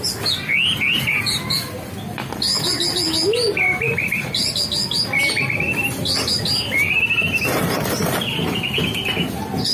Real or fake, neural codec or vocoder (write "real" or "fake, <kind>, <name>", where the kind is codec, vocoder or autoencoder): real